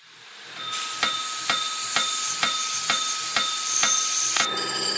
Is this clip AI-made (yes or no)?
no